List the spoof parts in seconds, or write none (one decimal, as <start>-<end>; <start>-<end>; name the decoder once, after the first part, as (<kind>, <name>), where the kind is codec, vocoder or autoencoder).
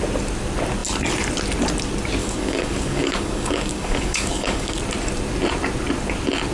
2.2-4.8 (codec, DAC)